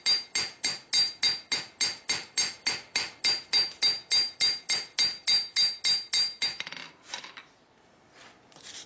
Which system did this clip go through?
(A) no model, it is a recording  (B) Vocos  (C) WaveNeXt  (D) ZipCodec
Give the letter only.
A